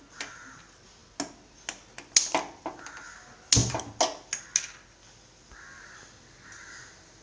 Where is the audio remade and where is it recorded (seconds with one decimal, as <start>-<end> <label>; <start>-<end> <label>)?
0.0-7.2 recorded